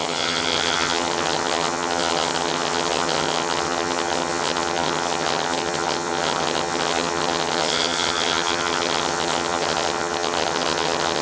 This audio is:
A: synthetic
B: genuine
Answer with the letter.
A